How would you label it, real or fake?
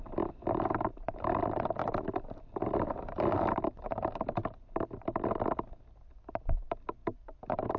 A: real